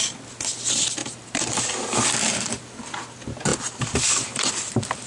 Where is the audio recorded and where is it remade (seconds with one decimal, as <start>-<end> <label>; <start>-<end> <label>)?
0.0-1.0 recorded; 1.0-1.6 remade; 1.6-3.5 recorded; 3.5-4.5 remade; 4.5-5.1 recorded